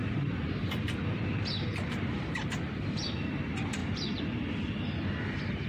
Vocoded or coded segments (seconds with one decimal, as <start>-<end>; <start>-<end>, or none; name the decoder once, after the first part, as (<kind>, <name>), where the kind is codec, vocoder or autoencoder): 0.0-3.4 (vocoder, BigVGAN v2)